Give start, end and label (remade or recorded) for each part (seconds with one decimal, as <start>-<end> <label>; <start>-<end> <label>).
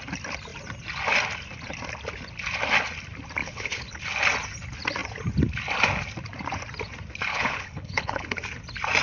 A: 0.0-3.4 recorded; 3.4-4.0 remade; 4.0-7.3 recorded; 7.3-8.4 remade; 8.4-9.0 recorded